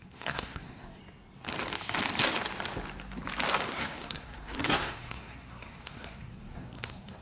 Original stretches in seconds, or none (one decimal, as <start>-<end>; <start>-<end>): 1.0-3.7